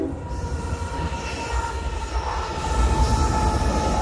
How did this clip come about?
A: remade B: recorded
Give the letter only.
B